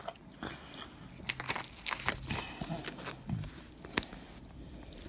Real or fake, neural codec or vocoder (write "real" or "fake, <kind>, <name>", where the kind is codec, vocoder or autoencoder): real